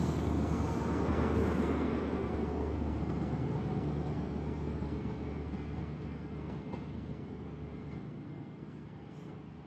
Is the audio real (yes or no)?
no